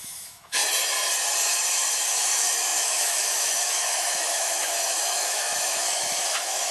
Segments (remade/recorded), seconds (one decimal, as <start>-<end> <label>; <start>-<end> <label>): 0.0-0.6 remade; 0.6-2.1 recorded; 2.1-6.7 remade

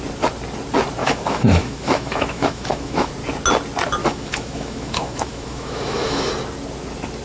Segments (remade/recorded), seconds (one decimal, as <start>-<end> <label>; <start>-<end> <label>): 0.0-1.0 recorded; 1.0-3.1 remade; 3.1-4.0 recorded; 4.0-6.3 remade; 6.3-7.2 recorded

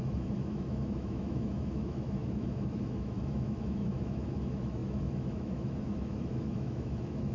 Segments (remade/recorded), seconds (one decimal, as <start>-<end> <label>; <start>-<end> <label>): 0.0-7.3 remade

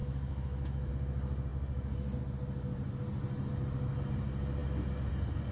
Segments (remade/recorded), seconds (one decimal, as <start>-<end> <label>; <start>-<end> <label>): 0.0-0.9 remade; 0.9-5.5 recorded